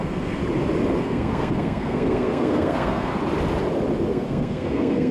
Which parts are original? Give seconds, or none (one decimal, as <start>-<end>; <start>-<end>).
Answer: 0.4-1.0; 3.2-4.1